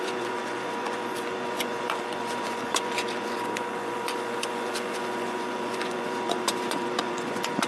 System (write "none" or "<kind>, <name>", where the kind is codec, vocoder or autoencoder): vocoder, Vocos